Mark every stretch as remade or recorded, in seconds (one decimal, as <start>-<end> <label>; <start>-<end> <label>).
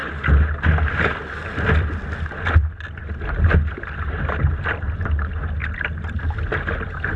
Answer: 0.0-7.2 recorded